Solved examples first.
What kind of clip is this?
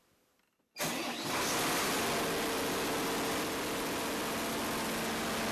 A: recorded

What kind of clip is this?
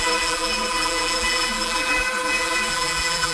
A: remade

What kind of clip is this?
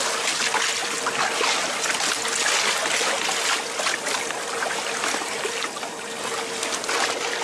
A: recorded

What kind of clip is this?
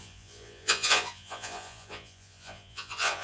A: remade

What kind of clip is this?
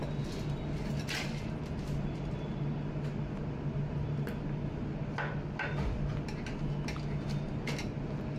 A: recorded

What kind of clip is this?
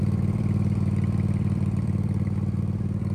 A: remade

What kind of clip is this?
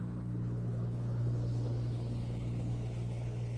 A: remade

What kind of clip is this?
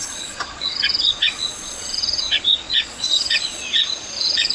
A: remade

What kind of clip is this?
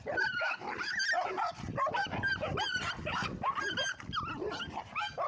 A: recorded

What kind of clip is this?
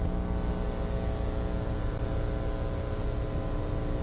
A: recorded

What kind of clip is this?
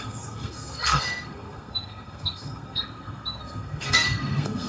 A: remade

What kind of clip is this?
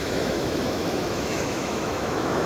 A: remade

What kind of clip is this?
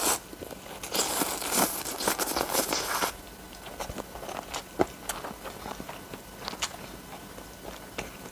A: recorded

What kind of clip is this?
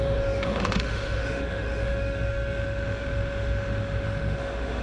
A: remade